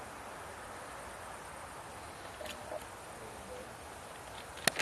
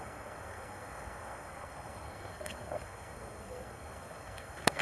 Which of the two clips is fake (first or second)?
second